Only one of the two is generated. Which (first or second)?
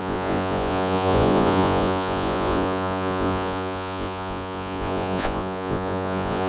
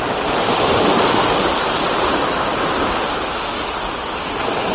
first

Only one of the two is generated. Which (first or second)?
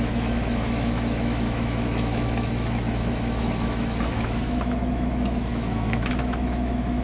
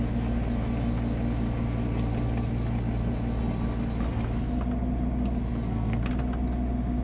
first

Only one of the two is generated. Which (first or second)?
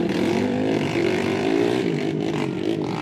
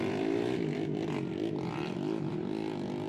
first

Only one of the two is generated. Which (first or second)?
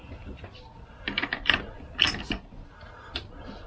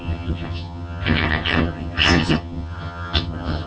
second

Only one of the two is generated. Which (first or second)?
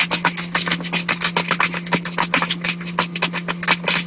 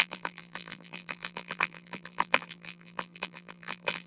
second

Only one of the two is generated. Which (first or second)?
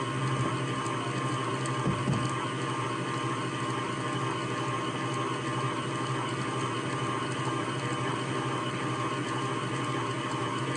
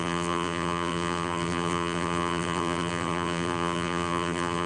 second